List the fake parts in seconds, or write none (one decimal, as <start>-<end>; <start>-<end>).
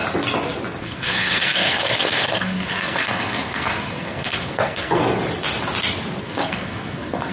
0.8-5.0; 6.2-7.3